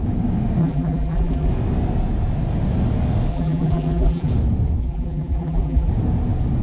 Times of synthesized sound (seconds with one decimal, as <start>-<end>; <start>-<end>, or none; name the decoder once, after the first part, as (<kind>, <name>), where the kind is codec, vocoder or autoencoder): 0.6-1.5 (vocoder, BigVGAN v2); 3.3-4.3; 4.8-5.9